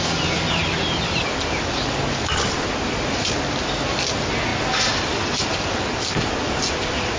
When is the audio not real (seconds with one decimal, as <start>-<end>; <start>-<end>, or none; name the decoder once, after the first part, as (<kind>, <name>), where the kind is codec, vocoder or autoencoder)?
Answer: none